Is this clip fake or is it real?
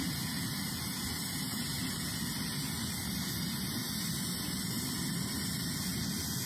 real